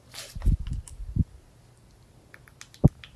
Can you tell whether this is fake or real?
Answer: real